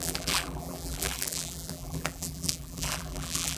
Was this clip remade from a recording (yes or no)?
yes